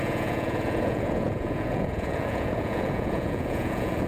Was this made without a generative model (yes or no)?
no